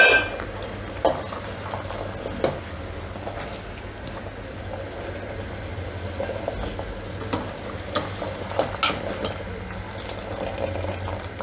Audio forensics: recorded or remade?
recorded